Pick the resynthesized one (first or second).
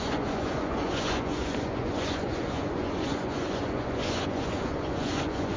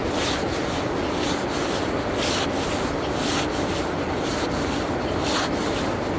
first